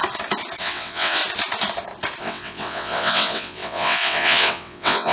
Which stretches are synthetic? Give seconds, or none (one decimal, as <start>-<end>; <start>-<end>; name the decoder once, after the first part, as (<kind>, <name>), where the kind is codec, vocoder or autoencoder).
0.6-1.2 (vocoder, WaveNeXt); 2.2-5.1